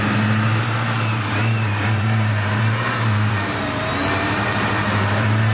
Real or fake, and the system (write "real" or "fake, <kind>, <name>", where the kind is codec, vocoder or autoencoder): fake, vocoder, BigVGAN v2